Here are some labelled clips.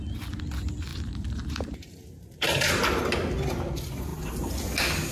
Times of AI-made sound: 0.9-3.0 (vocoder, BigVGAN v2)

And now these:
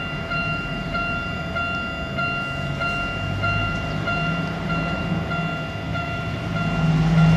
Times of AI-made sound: 0.4-1.4 (vocoder, BigVGAN v2); 3.6-5.0; 5.9-6.5

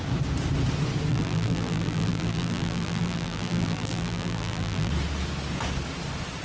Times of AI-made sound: 1.1-4.9 (vocoder, BigVGAN v2)

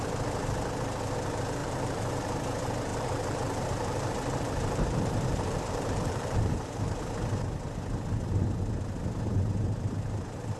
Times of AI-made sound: 1.6-2.2 (vocoder, BigVGAN v2); 2.9-7.0

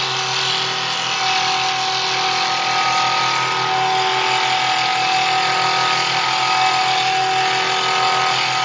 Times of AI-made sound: none

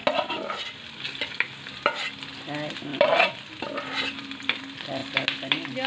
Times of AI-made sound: 0.0-0.9 (vocoder, BigVGAN v2); 2.9-4.6